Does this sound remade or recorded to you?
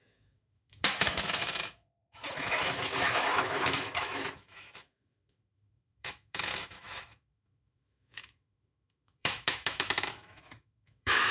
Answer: remade